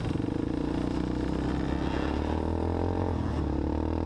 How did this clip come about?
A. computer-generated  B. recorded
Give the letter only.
B